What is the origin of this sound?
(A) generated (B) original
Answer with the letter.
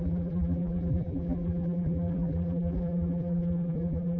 A